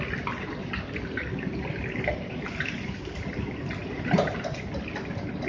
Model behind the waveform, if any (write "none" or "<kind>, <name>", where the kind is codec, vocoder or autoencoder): none